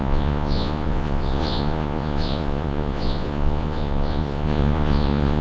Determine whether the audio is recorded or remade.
remade